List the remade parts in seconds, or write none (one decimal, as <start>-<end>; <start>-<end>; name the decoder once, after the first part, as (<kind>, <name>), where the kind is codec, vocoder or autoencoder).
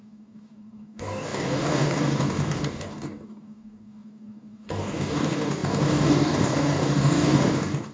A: 0.0-7.9 (codec, DAC)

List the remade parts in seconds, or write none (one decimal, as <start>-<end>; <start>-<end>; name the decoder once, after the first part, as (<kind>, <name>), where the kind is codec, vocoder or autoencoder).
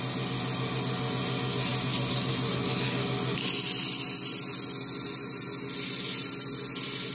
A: none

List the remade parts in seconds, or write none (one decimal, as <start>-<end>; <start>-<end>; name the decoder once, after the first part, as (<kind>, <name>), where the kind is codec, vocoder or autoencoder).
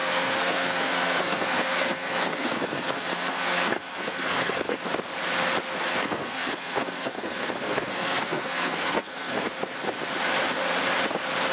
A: 0.0-4.8 (codec, SNAC); 5.9-9.5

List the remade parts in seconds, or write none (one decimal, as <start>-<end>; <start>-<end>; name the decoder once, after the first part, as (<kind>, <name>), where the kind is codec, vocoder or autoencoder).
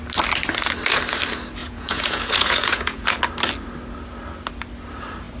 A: 1.6-3.2 (vocoder, Vocos)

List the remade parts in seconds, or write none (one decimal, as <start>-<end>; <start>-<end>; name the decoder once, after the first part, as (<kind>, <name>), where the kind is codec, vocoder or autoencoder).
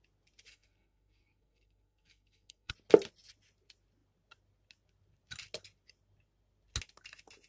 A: 0.5-2.7 (codec, SNAC)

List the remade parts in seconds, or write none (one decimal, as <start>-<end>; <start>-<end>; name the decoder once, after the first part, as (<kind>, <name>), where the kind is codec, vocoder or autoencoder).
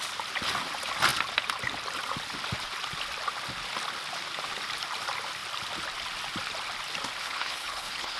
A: 7.2-8.2 (codec, HILCodec)